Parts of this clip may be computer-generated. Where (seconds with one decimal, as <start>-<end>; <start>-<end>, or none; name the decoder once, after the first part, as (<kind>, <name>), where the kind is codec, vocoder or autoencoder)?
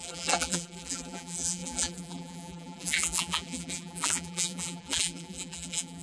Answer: 0.0-6.0 (vocoder, BigVGAN v2)